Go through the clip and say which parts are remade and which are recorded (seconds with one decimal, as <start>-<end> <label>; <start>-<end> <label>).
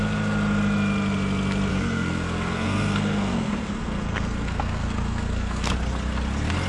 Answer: 0.0-1.7 recorded; 1.7-5.7 remade; 5.7-6.7 recorded